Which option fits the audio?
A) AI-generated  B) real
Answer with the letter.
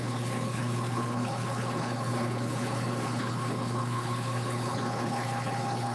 A